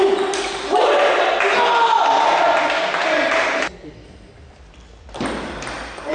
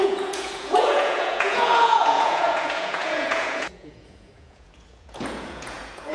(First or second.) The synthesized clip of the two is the second